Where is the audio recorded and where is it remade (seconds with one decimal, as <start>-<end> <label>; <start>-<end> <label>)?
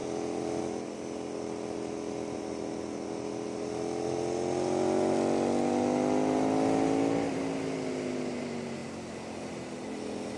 0.0-10.4 recorded